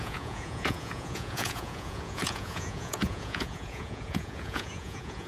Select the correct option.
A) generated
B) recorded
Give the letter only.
A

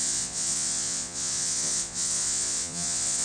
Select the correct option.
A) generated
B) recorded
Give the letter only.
A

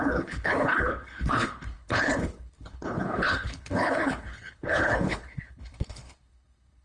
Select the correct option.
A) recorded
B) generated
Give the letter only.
B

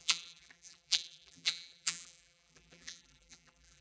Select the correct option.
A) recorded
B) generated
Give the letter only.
B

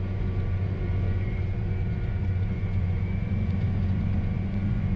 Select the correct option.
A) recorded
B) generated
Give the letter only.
B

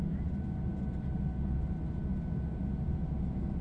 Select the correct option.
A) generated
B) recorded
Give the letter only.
B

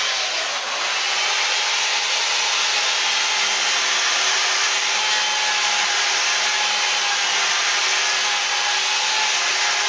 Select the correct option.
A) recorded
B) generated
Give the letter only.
A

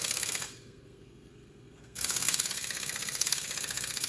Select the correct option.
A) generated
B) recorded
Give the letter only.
A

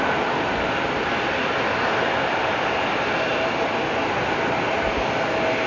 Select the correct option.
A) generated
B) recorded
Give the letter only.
B